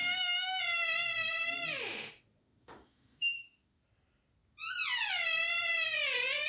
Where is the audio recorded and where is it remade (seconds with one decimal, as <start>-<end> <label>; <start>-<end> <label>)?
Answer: 0.0-0.6 remade; 0.6-2.4 recorded; 2.4-3.8 remade; 3.8-6.5 recorded